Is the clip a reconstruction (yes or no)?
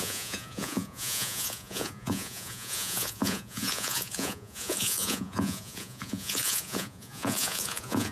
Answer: yes